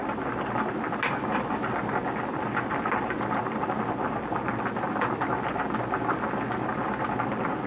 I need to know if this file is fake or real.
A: real